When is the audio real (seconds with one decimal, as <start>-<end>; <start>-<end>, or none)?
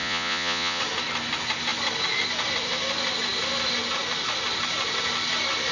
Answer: 0.8-5.7